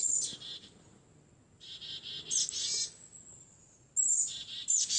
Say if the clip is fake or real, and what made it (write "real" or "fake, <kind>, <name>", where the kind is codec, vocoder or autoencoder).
real